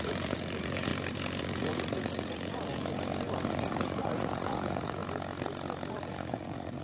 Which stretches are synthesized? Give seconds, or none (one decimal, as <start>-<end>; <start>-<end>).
0.0-0.9; 1.4-2.8; 3.5-5.0; 5.9-6.8